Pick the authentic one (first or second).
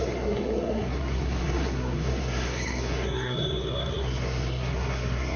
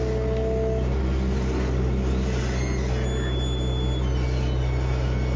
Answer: second